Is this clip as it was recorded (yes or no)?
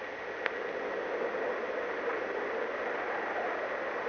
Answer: yes